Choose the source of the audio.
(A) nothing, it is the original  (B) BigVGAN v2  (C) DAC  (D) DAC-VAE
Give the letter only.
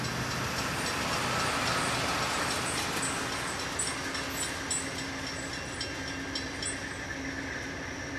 A